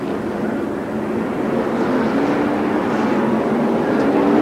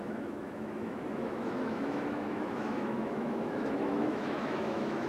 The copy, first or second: second